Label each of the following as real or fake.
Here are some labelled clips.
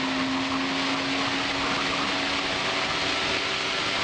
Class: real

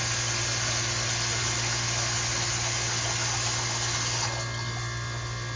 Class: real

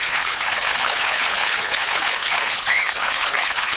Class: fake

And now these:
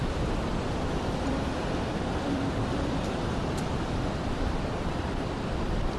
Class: fake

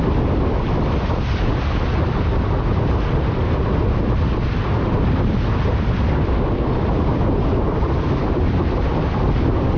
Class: real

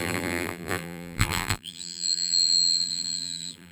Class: fake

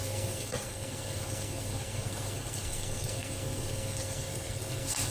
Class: fake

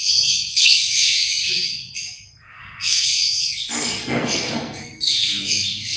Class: fake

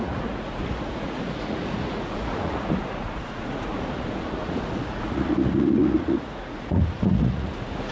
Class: fake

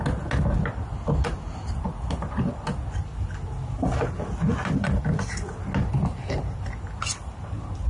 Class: real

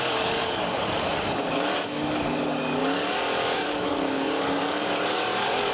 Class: fake